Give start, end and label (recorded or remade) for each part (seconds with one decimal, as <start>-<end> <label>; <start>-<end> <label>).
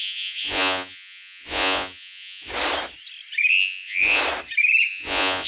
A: 0.0-2.5 remade; 2.5-3.5 recorded; 3.5-4.2 remade; 4.2-4.9 recorded; 4.9-5.5 remade